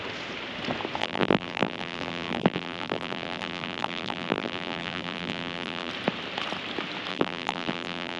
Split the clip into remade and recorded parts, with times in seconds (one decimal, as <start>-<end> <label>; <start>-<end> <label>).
0.0-1.0 recorded; 1.0-5.9 remade; 5.9-7.1 recorded; 7.1-8.2 remade